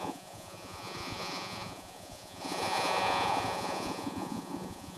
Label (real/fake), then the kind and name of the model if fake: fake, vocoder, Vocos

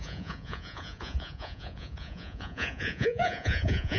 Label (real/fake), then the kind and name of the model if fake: fake, vocoder, Vocos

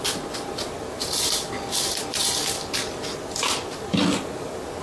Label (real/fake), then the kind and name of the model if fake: real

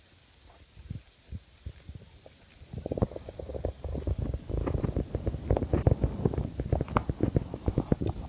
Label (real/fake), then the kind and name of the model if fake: real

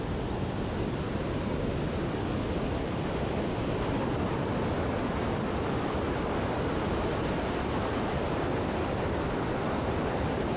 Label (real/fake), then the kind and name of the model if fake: real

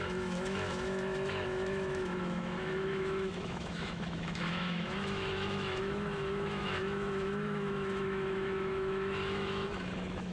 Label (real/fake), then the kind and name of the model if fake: fake, autoencoder, DAC-VAE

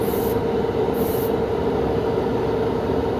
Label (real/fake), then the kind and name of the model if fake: real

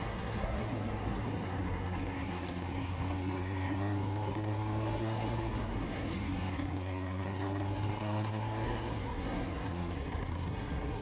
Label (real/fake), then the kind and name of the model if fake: fake, codec, SNAC